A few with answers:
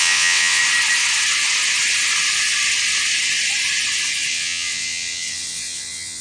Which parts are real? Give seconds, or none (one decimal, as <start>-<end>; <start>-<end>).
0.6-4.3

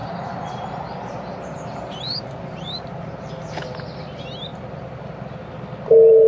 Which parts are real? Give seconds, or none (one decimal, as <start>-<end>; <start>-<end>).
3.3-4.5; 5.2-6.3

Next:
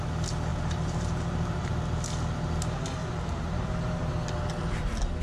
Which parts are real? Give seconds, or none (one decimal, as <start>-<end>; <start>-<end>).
0.0-0.5; 1.7-3.0; 4.1-5.2

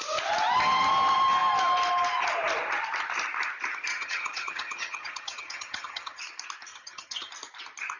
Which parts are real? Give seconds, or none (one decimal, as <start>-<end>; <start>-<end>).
0.0-3.9; 6.2-6.7; 7.3-8.0